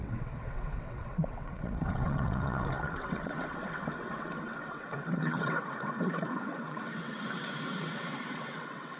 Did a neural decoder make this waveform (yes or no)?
yes